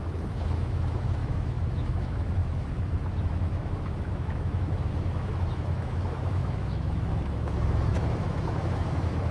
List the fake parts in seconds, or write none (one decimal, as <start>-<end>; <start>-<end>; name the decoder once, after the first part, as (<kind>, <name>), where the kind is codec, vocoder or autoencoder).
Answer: 0.0-9.3 (autoencoder, DAC-VAE)